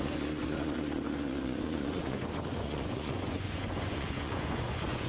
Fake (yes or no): yes